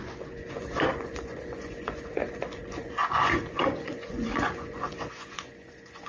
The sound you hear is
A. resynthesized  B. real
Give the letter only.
A